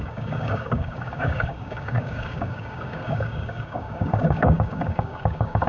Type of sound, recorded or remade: remade